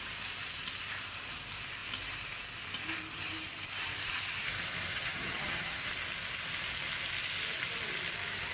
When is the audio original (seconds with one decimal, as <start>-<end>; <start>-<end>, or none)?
0.0-4.9; 5.9-8.5

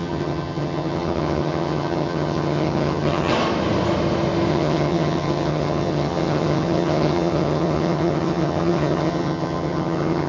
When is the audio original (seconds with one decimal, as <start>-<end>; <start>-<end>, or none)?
3.3-4.5

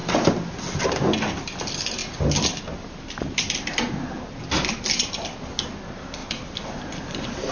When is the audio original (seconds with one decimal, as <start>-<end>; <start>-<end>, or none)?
0.0-7.5

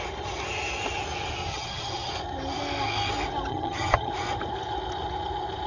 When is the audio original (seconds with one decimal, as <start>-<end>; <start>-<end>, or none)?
0.0-1.5; 2.1-3.5; 4.1-5.7

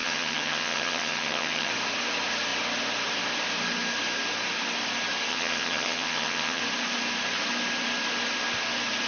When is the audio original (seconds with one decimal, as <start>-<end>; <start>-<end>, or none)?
1.7-5.3; 6.6-9.1

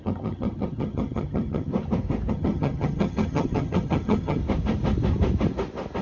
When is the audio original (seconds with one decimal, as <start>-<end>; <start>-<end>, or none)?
1.7-2.3; 4.4-6.0

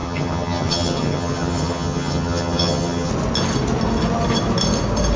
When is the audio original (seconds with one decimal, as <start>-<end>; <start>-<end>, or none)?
3.1-5.2

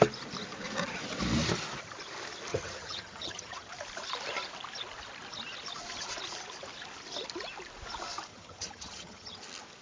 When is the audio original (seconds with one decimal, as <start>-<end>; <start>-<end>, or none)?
0.0-2.5; 3.7-8.3; 9.4-9.8